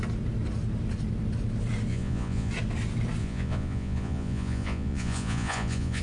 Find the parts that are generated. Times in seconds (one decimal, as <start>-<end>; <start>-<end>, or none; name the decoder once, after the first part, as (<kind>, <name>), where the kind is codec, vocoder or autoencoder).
1.9-2.5 (vocoder, Vocos); 3.2-6.0